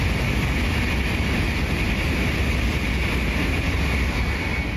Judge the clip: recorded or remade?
recorded